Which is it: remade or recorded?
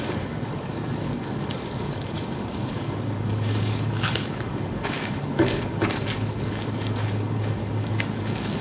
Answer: remade